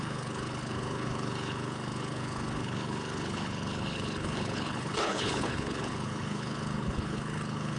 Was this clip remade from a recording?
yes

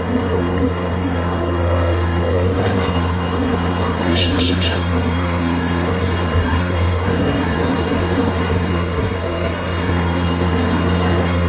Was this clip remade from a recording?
yes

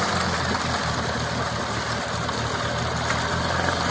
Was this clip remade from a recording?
no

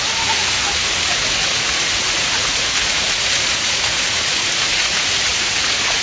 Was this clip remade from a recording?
yes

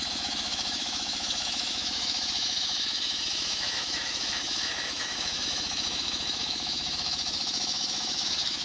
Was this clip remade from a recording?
yes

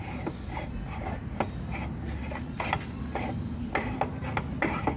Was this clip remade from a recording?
no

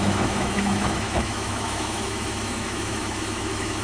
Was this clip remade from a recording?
yes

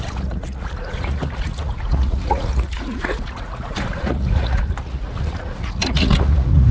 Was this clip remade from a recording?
yes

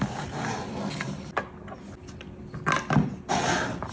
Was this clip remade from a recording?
no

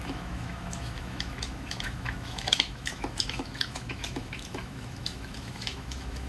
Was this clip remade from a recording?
yes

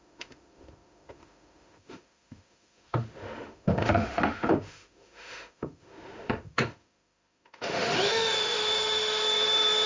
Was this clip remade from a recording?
yes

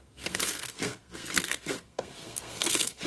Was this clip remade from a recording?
yes